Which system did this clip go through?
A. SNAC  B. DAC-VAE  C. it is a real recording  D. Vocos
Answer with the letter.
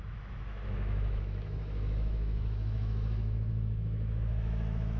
B